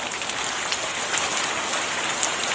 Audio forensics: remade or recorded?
recorded